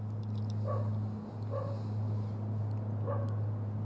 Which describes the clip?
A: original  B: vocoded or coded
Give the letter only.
A